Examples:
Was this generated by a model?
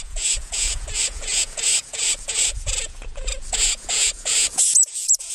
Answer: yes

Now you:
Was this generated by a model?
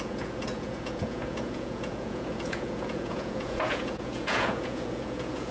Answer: yes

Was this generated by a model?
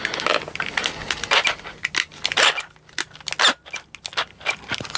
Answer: no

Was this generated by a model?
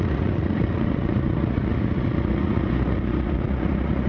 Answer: yes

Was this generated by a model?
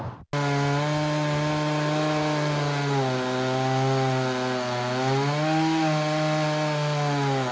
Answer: no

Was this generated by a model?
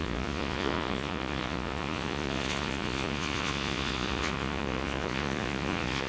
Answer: yes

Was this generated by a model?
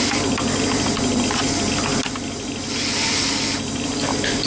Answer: no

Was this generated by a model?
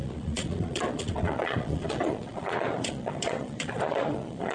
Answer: yes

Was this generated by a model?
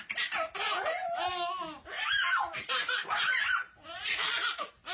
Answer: no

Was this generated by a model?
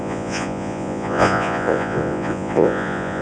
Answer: yes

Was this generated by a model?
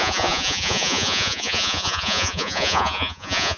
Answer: yes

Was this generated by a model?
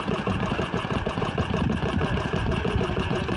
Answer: yes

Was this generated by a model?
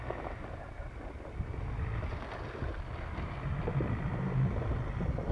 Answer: no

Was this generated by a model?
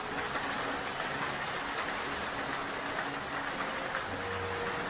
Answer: no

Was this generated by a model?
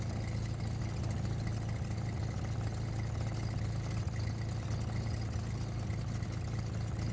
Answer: no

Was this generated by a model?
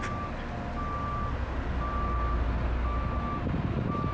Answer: no